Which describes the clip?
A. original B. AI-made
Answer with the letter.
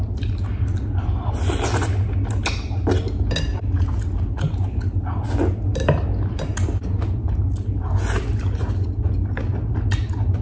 A